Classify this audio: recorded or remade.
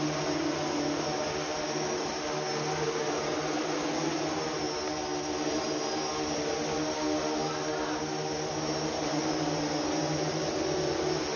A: recorded